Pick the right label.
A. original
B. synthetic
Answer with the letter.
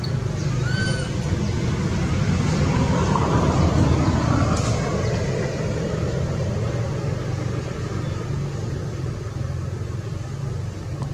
A